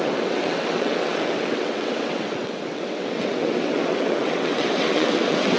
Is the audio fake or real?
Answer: fake